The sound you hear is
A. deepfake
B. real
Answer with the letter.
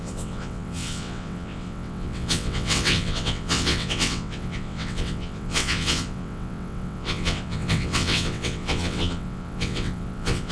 A